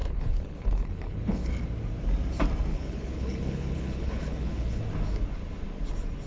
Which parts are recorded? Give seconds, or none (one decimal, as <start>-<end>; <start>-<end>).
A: 1.5-2.7; 4.8-6.3